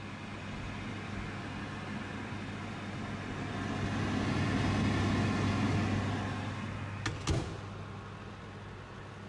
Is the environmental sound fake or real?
real